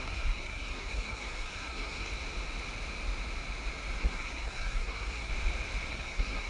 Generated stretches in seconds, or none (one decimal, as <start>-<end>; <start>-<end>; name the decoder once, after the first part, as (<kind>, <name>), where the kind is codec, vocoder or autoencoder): 0.0-2.1 (codec, SNAC); 4.0-5.3; 5.9-6.5

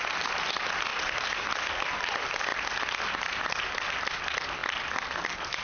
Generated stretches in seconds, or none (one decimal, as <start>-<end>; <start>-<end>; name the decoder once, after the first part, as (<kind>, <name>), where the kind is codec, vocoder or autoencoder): none

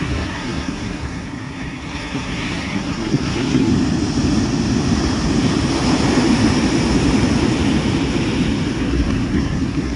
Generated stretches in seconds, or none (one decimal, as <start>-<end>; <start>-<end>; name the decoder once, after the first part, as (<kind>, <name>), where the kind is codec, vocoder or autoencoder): 0.0-3.7 (codec, SNAC); 8.8-10.0

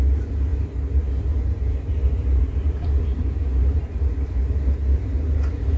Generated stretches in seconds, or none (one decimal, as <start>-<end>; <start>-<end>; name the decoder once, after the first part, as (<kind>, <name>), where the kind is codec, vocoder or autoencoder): 2.0-3.8 (vocoder, BigVGAN v2)

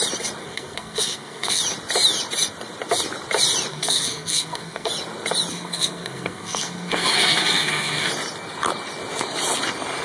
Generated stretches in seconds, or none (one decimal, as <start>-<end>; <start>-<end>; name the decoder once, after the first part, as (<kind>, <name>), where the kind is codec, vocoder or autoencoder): 0.4-1.6 (codec, SNAC); 3.7-4.9; 5.5-8.1

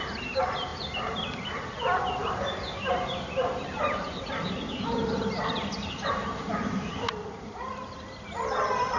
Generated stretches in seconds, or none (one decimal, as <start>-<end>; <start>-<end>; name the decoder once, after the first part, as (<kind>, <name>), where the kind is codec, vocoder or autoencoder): 0.7-1.7 (vocoder, BigVGAN v2); 2.2-2.9

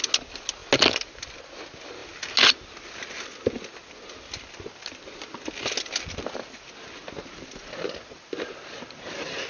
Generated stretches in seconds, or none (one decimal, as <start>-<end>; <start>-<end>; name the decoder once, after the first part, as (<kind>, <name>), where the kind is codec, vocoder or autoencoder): none